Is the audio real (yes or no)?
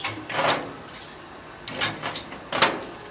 yes